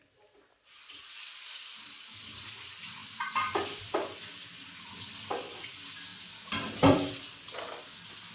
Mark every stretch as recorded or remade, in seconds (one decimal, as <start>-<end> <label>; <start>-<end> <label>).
0.0-3.0 recorded; 3.0-3.8 remade; 3.8-6.1 recorded; 6.1-7.2 remade; 7.2-8.3 recorded